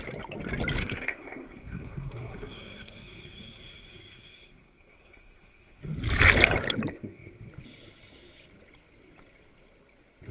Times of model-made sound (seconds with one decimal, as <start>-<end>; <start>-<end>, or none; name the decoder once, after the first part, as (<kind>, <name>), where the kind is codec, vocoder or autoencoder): 0.8-5.8 (codec, SNAC); 6.9-7.5